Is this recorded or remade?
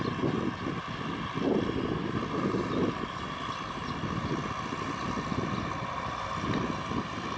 recorded